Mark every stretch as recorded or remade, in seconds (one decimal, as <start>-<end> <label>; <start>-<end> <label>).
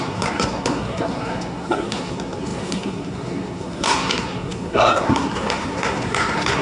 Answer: 0.0-6.6 remade